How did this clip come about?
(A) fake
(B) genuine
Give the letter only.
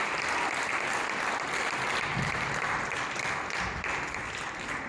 A